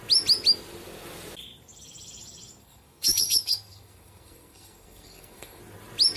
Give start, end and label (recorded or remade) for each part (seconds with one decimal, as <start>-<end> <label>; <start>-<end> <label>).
0.0-2.6 recorded; 2.6-5.6 remade; 5.6-6.2 recorded